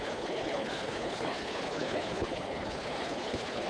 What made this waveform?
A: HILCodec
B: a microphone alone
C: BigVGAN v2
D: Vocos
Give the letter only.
A